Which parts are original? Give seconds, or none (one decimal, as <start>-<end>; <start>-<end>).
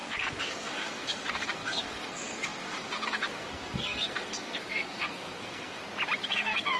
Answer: 5.8-6.3